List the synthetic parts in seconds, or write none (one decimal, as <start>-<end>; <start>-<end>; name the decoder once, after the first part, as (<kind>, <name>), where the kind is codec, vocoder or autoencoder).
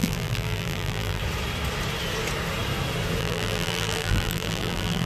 0.0-1.2 (vocoder, BigVGAN v2); 3.2-5.1